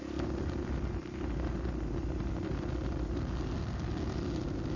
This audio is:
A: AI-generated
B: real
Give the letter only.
B